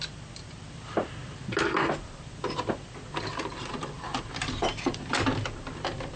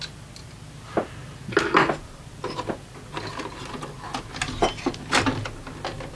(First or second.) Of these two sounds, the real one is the second